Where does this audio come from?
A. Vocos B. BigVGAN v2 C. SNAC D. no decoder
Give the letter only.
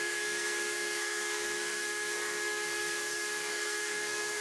C